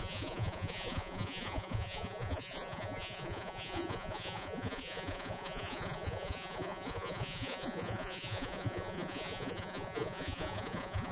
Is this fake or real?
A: fake